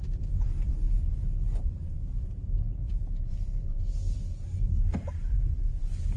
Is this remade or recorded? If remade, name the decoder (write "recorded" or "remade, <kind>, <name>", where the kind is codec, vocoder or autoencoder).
remade, vocoder, BigVGAN v2